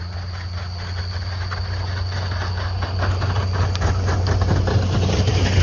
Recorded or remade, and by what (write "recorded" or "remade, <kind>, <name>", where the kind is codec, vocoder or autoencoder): recorded